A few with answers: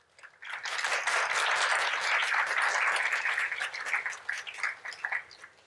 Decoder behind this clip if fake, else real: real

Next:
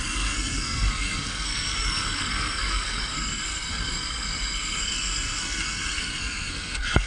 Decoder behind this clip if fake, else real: fake, codec, SNAC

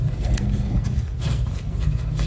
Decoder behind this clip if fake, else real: fake, codec, SNAC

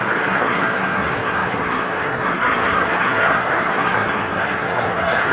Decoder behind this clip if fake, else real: fake, codec, SNAC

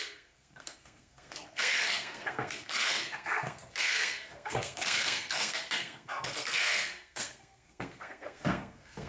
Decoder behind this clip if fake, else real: fake, codec, SNAC